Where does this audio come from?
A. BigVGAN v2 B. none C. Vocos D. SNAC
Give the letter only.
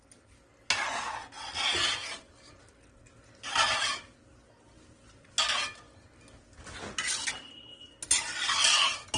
B